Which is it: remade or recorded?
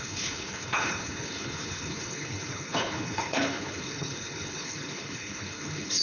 remade